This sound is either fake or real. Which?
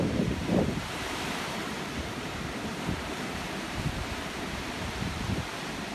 fake